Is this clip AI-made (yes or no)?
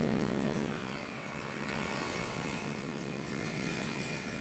yes